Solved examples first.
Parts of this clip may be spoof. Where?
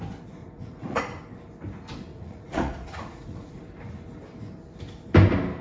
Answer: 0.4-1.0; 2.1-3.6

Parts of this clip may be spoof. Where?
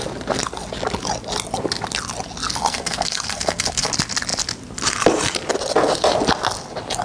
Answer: 2.6-3.9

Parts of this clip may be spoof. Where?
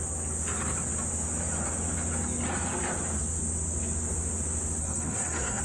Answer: 4.8-5.6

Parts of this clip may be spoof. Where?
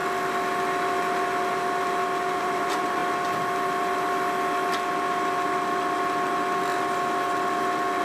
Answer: 2.3-3.0